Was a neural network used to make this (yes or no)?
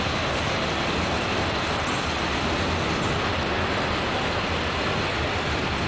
no